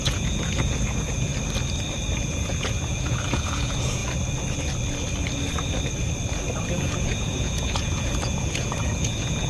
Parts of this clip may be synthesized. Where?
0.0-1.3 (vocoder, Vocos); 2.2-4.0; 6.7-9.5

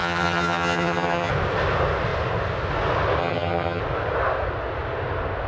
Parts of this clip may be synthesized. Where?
0.0-1.3 (vocoder, HiFi-GAN); 3.2-3.8

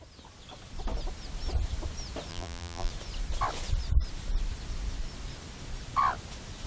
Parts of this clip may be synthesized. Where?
2.3-2.9 (vocoder, BigVGAN v2)

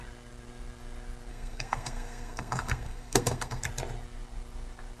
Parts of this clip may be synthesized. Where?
1.3-3.6 (codec, SNAC)